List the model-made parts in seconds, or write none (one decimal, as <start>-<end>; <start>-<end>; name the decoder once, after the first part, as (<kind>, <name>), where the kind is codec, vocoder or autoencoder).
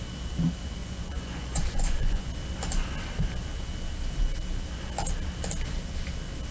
0.8-2.3 (vocoder, Vocos)